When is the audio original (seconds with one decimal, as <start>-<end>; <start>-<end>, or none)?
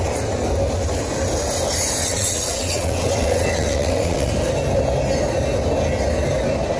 0.0-2.0; 4.3-6.8